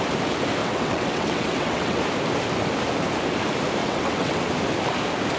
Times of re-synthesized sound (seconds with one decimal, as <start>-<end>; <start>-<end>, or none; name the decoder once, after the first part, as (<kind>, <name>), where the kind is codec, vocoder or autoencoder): 0.6-2.0 (vocoder, WaveNeXt); 3.8-4.5